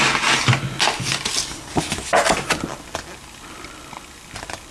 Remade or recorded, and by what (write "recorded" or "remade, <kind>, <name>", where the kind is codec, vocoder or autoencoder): recorded